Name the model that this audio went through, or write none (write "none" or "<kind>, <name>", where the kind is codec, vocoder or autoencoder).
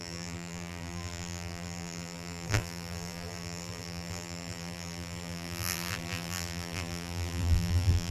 vocoder, BigVGAN v2